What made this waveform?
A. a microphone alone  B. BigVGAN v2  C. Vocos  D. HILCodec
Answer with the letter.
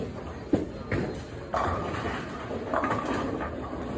A